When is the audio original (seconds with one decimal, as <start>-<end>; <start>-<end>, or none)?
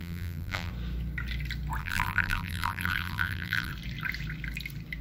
0.7-1.8; 3.7-5.0